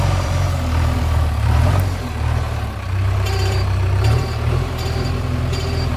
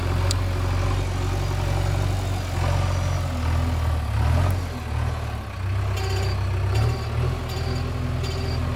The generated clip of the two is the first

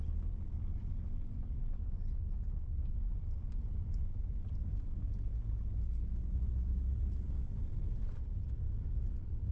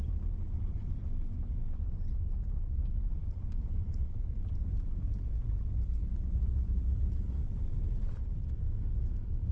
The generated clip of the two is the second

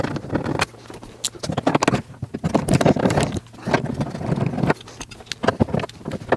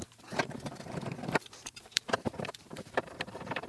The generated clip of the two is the second